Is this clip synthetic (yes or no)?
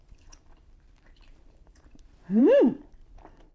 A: yes